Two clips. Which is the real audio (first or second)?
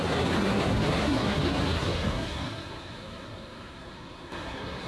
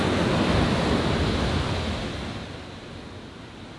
second